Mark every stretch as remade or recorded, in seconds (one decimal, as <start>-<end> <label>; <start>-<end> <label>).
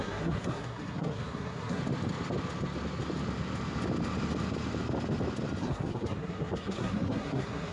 0.0-1.8 remade; 1.8-5.6 recorded; 5.6-7.7 remade